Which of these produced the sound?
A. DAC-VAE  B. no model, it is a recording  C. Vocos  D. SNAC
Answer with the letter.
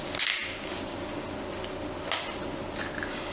B